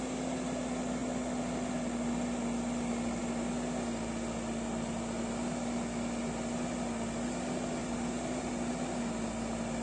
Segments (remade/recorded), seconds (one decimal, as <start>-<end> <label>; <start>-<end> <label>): 0.0-7.8 recorded; 7.8-8.7 remade; 8.7-9.8 recorded